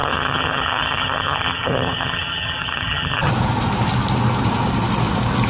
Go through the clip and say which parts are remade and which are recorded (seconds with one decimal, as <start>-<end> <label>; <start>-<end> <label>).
0.0-3.3 remade; 3.3-5.5 recorded